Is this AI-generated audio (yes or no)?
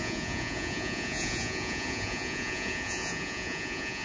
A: yes